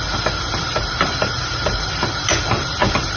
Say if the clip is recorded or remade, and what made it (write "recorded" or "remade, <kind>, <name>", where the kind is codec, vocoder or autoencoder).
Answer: remade, vocoder, BigVGAN v2